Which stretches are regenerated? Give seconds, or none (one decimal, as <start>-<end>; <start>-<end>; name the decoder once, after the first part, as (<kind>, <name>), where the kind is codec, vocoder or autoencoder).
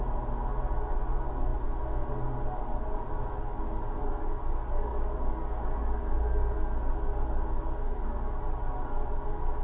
none